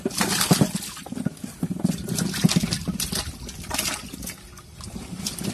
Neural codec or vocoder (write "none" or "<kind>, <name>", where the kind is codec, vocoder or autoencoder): none